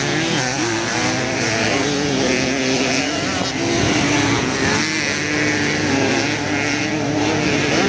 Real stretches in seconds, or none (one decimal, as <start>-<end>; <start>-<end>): 0.0-7.9